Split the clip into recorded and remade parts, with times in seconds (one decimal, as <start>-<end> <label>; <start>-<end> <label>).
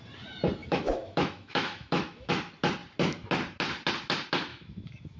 0.0-0.6 recorded; 0.6-2.3 remade; 2.3-4.5 recorded; 4.5-5.2 remade